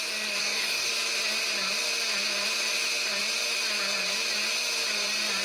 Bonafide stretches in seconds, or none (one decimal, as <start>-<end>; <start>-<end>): 0.0-0.4; 0.9-5.4